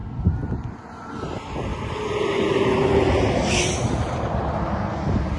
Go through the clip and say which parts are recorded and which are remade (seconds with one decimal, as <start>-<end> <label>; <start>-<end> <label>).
0.0-5.4 recorded